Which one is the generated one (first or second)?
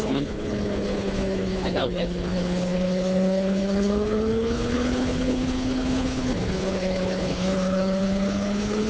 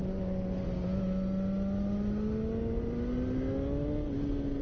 first